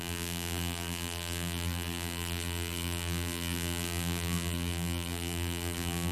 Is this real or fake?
fake